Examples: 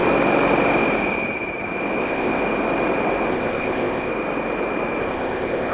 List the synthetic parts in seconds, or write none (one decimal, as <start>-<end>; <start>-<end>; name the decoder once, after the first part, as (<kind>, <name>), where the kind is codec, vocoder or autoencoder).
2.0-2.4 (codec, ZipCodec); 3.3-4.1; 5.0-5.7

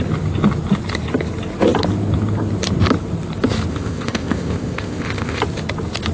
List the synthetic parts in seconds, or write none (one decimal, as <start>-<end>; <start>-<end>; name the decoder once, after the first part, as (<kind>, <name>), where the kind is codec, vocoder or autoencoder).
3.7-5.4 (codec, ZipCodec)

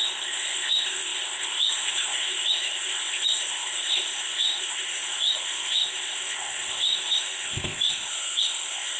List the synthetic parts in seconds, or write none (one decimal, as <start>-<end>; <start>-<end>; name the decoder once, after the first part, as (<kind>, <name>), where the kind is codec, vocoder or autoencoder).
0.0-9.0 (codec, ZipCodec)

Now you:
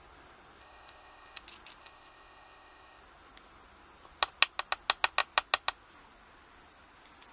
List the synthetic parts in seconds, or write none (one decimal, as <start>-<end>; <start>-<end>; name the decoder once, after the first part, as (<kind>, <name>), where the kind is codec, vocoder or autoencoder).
0.6-1.4 (codec, ZipCodec); 1.8-3.0

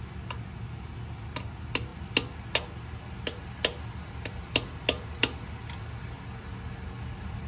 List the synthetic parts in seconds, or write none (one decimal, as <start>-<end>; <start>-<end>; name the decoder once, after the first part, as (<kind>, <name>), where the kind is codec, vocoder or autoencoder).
none

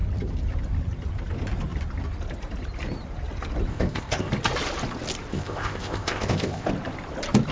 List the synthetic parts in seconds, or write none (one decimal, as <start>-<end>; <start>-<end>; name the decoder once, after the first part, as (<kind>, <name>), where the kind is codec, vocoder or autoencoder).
3.7-4.3 (codec, ZipCodec); 5.3-6.7

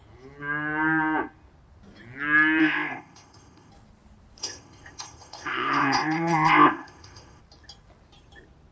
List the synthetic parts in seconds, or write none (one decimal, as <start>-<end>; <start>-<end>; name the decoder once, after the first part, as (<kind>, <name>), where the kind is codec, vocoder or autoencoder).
2.6-3.7 (codec, ZipCodec); 4.4-7.4